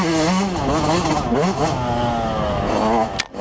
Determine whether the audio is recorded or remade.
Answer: recorded